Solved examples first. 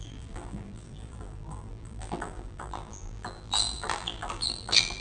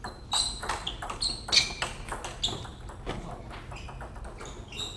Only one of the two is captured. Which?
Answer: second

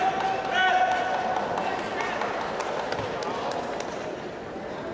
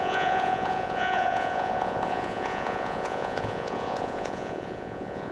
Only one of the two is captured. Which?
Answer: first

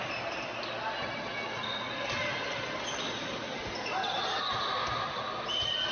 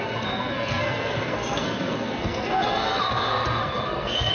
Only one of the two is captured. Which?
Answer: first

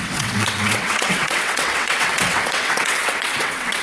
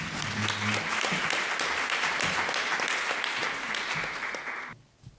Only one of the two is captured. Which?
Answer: second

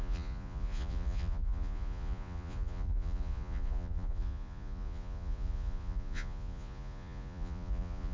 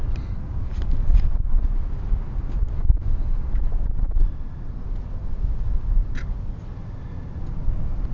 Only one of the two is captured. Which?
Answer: second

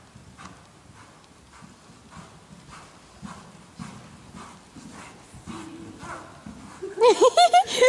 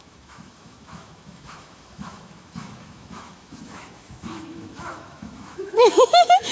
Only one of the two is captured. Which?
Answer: first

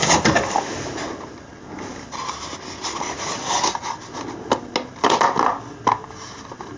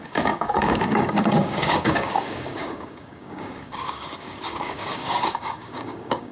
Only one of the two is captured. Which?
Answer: first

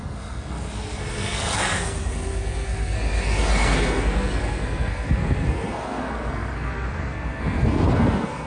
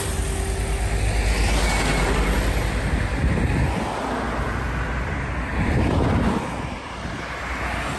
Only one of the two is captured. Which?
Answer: second